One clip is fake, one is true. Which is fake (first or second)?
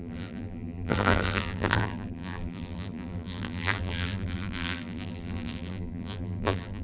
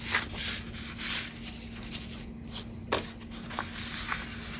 first